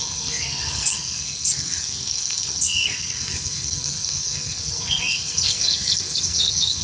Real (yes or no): no